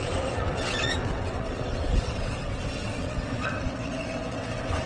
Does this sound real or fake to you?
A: fake